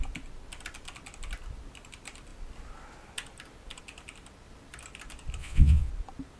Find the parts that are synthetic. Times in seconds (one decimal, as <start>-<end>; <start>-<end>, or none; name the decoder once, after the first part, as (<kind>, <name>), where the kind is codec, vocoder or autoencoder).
5.4-5.9 (vocoder, Vocos)